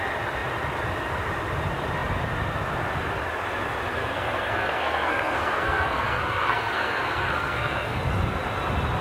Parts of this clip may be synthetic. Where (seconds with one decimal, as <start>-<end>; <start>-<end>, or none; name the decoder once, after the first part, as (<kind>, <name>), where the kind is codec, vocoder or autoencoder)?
3.9-8.0 (codec, SNAC)